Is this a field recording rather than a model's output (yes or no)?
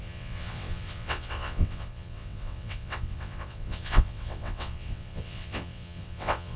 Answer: no